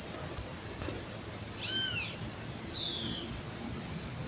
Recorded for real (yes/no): yes